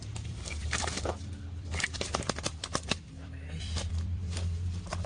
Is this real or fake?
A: fake